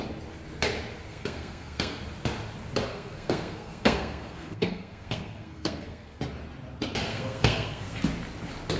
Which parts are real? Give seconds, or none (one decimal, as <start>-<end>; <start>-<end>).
0.0-1.1; 2.0-2.9; 6.2-7.1; 8.0-8.8